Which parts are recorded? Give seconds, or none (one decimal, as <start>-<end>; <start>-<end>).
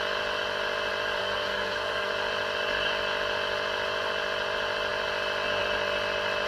0.0-1.2; 2.1-6.5